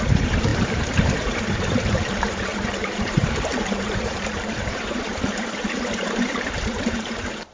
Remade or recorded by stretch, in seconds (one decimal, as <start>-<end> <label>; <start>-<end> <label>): 0.0-7.5 remade